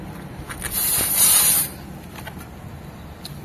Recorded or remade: recorded